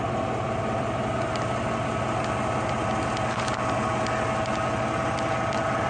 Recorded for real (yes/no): yes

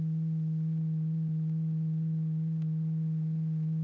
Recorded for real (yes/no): yes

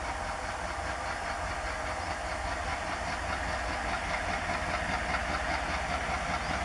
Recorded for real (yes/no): yes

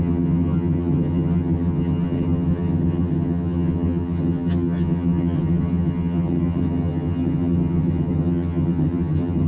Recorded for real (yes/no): no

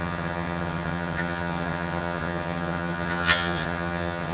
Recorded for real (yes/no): no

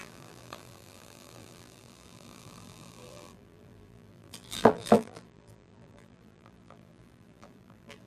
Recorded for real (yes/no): no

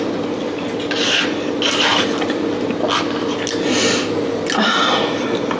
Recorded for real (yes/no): yes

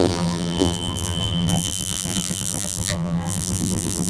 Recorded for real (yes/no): no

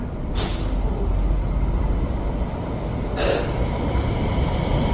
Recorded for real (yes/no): yes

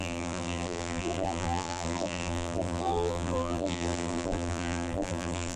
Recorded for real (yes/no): no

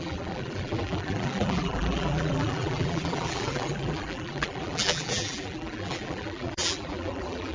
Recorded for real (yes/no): no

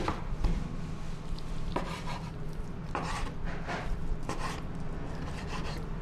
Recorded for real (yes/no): no